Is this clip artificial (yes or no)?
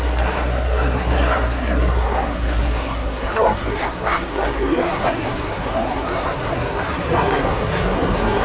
yes